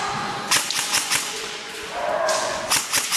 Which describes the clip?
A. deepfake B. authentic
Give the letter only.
A